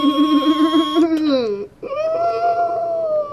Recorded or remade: recorded